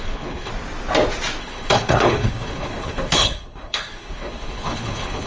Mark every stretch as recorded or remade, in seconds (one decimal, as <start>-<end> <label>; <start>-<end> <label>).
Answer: 0.0-0.5 remade; 0.5-1.4 recorded; 1.4-5.3 remade